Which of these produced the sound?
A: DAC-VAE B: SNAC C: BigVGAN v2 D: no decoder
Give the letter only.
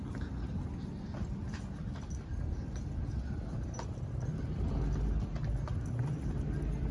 D